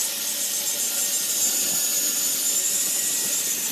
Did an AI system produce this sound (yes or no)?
no